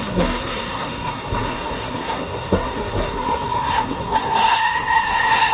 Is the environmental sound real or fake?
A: fake